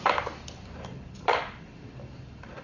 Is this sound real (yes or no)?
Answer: no